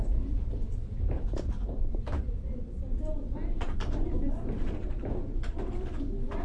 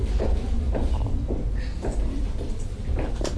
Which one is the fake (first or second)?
first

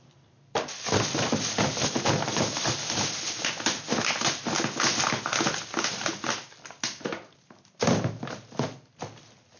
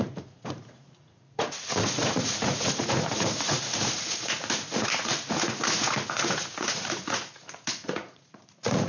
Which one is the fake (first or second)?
second